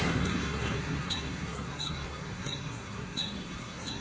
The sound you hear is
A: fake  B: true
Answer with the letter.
A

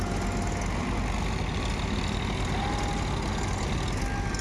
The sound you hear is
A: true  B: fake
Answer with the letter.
A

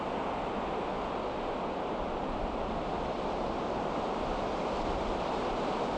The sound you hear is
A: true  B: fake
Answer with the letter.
A